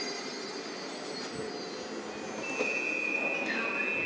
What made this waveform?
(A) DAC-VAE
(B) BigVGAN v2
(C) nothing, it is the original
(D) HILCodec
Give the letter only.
C